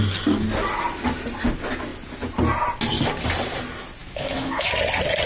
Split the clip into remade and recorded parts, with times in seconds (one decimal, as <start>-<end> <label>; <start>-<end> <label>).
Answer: 0.0-4.0 recorded; 4.0-4.7 remade; 4.7-5.3 recorded